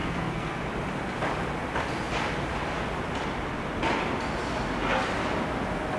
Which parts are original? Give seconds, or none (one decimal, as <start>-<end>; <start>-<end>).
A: 0.6-6.0